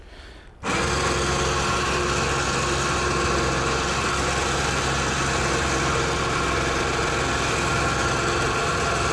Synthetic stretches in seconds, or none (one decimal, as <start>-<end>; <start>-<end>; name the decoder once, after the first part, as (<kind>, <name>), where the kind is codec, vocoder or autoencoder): none